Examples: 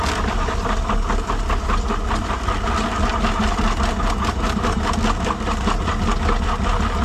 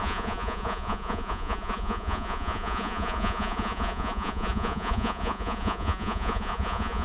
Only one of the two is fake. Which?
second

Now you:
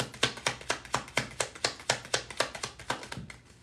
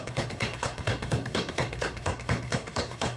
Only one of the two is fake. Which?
second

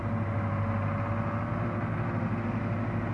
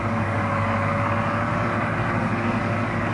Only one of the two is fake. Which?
second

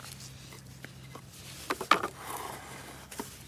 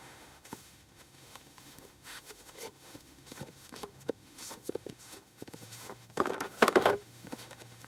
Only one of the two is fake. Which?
second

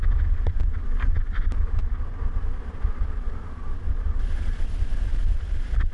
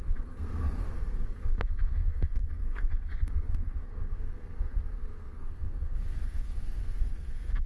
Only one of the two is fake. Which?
second